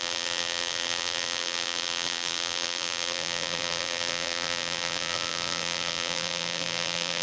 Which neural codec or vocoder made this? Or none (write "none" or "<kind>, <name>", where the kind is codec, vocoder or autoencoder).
vocoder, BigVGAN v2